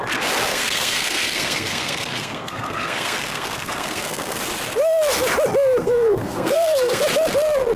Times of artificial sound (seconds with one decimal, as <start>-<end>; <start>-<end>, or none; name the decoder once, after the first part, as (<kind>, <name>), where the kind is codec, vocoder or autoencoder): 0.5-4.4 (codec, SNAC); 5.8-7.0